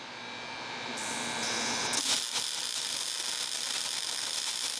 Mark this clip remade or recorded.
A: recorded